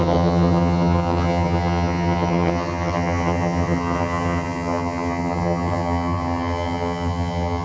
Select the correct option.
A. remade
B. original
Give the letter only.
A